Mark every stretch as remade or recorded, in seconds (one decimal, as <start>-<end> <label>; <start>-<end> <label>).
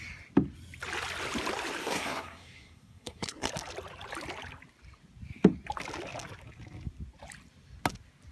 0.0-1.8 recorded; 1.8-3.5 remade; 3.5-8.3 recorded